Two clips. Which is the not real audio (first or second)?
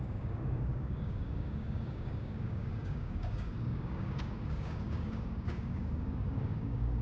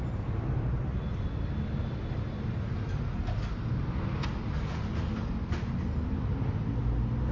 first